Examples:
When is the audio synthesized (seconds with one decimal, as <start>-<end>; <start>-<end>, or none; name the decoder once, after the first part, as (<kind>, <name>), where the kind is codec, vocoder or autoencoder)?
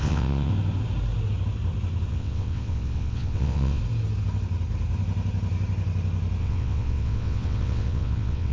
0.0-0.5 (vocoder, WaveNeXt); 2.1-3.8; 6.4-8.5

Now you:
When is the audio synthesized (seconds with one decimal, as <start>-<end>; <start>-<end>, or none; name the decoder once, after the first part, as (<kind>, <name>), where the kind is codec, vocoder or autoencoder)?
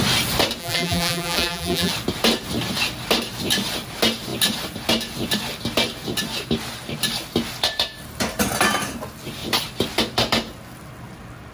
0.6-1.9 (vocoder, BigVGAN v2)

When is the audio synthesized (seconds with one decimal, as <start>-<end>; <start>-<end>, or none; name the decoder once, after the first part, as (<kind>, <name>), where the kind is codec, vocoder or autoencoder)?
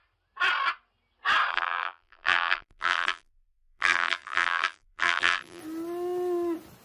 1.5-5.6 (vocoder, BigVGAN v2)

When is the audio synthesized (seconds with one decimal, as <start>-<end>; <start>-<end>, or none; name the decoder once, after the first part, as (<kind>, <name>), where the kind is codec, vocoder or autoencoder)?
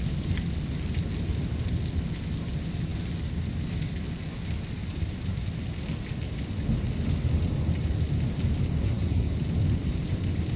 8.8-9.3 (codec, SNAC)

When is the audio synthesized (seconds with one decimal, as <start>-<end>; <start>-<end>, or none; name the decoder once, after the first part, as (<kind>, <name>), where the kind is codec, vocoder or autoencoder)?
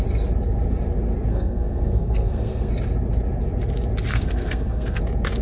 1.3-2.7 (codec, SNAC); 4.1-5.0